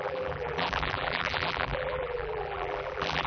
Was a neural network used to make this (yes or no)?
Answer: yes